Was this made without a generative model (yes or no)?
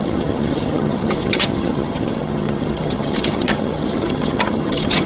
no